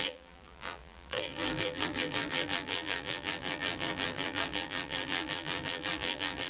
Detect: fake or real fake